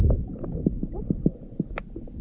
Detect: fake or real real